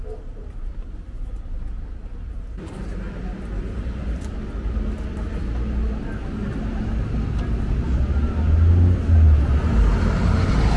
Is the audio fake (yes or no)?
no